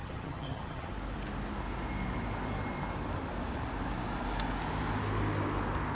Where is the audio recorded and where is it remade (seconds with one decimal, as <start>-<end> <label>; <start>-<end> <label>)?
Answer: 0.0-0.9 remade; 0.9-5.9 recorded